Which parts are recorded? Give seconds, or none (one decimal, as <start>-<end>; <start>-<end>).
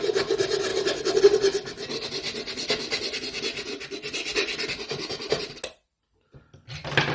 0.0-7.1